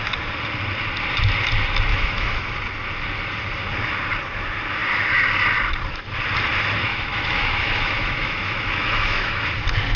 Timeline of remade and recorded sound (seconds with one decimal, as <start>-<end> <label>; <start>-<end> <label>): 0.0-1.9 recorded; 1.9-2.5 remade; 2.5-6.9 recorded; 6.9-9.5 remade; 9.5-10.0 recorded